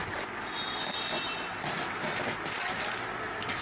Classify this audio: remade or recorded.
recorded